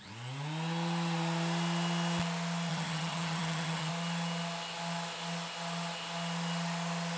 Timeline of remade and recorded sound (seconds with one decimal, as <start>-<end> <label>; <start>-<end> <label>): 0.0-2.7 recorded; 2.7-3.9 remade; 3.9-7.2 recorded